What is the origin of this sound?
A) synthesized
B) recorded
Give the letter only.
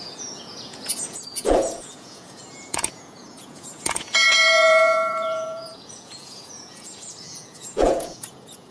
A